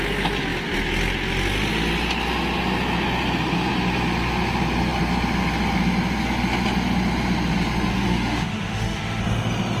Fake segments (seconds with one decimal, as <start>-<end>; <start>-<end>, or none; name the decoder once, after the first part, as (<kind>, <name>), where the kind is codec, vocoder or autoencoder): 7.9-9.2 (autoencoder, DAC-VAE)